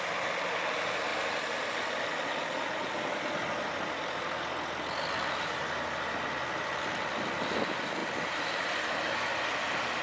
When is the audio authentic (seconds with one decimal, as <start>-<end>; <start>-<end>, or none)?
0.0-1.1; 1.6-8.0; 9.1-10.0